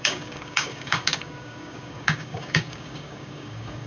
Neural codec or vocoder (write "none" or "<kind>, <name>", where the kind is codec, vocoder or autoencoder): codec, DAC